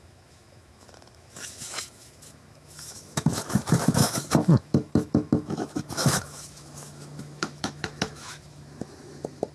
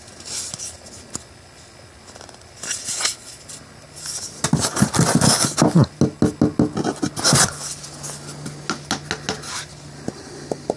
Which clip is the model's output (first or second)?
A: first